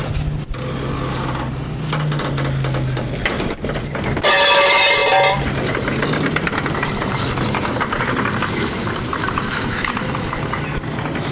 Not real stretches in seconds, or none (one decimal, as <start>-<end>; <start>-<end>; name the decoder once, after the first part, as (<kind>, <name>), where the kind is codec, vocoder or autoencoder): 4.2-11.3 (vocoder, BigVGAN v2)